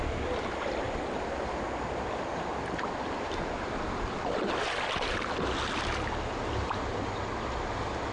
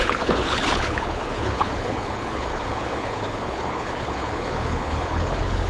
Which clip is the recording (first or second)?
first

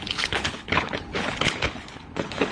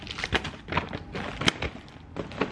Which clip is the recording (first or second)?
second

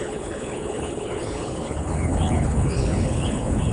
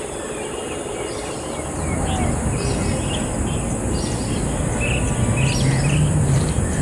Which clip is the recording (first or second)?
second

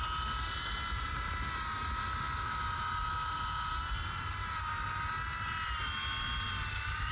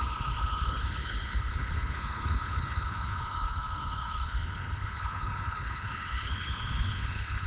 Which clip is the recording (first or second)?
first